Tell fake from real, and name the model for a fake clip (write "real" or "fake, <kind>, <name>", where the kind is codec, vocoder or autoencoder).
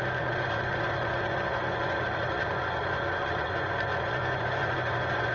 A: fake, vocoder, Vocos